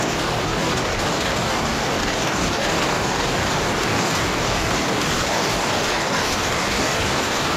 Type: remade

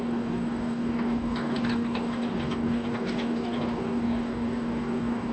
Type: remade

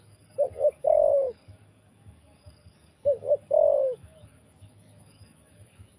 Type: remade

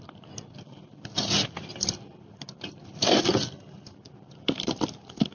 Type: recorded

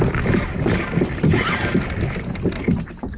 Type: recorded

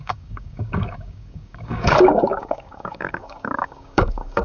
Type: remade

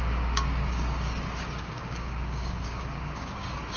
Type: remade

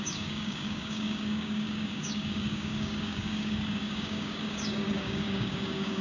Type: remade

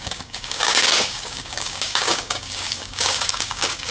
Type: remade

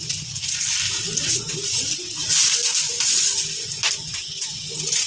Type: recorded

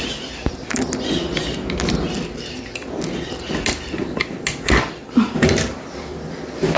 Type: recorded